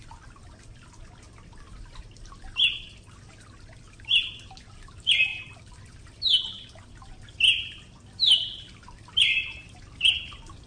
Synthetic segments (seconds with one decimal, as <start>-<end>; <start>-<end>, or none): none